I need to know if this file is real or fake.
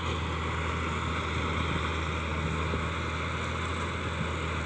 real